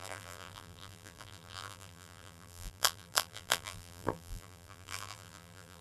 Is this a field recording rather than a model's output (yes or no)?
no